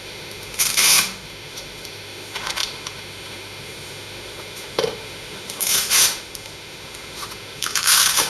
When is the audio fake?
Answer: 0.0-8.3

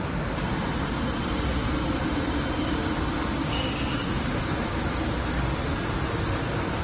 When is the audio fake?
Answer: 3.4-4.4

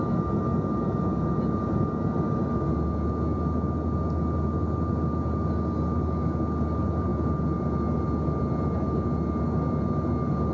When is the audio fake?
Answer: none

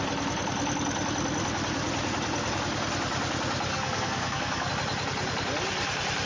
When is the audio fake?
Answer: 3.7-4.7

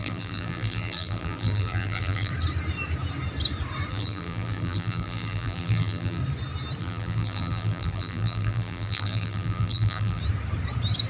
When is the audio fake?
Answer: 0.0-2.3; 3.9-6.2; 6.8-10.2

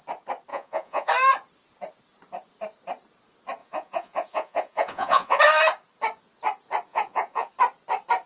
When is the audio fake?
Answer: 0.5-1.1; 3.6-5.4; 6.9-7.5